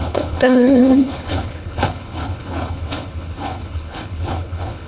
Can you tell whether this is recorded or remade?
remade